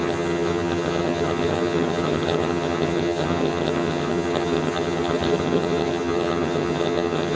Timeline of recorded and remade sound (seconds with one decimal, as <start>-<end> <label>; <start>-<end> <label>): 0.0-7.4 remade